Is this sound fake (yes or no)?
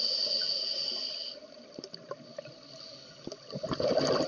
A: no